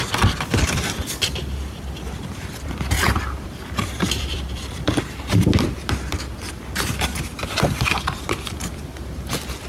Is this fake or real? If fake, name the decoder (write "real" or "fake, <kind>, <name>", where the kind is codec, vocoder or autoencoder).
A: fake, vocoder, BigVGAN v2